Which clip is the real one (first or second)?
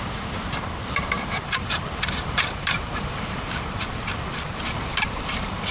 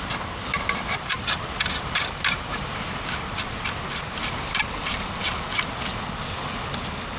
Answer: second